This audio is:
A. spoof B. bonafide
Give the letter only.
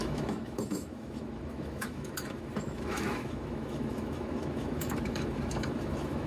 A